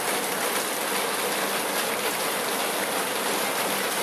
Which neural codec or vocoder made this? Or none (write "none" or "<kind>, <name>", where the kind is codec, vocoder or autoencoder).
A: none